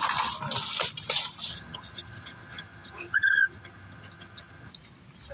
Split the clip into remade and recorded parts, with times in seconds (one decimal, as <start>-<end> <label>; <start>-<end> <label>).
0.0-1.5 recorded; 1.5-4.7 remade; 4.7-5.3 recorded